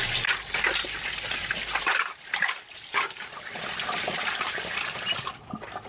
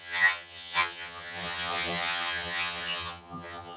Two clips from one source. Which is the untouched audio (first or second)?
first